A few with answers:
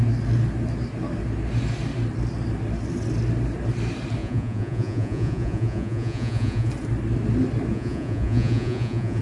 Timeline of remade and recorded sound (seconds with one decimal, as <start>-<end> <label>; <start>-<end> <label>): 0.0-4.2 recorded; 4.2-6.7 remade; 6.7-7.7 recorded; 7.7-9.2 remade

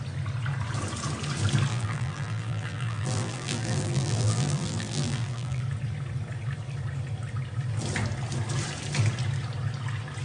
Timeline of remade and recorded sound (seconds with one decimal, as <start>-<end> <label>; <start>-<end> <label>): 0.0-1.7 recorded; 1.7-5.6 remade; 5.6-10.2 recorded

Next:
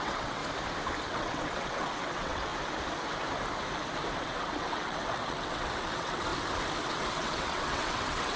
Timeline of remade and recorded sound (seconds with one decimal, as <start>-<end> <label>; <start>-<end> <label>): 0.0-0.4 remade; 0.4-1.0 recorded; 1.0-2.5 remade; 2.5-4.1 recorded; 4.1-6.3 remade; 6.3-6.9 recorded; 6.9-8.4 remade

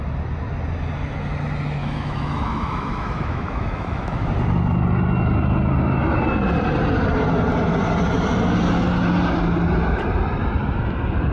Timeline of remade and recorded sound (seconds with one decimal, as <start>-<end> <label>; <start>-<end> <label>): 0.0-1.8 recorded; 1.8-4.3 remade; 4.3-11.3 recorded